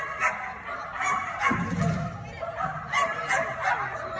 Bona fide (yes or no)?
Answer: yes